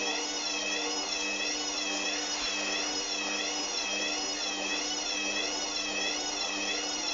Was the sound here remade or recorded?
recorded